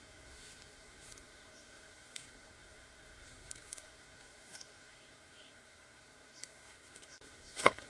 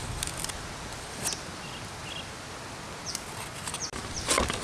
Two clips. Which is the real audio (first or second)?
second